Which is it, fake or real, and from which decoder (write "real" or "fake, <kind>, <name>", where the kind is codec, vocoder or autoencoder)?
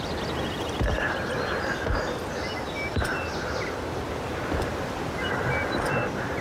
real